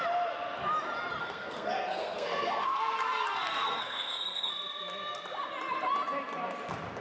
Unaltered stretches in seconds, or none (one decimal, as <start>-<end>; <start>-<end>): 0.0-1.2; 4.5-7.0